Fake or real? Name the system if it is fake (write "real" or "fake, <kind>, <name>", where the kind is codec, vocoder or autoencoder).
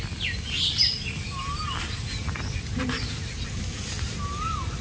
real